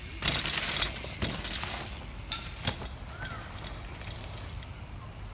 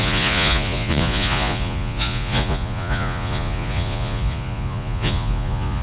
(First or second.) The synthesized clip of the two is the second